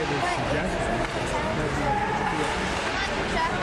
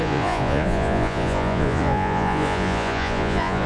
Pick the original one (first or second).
first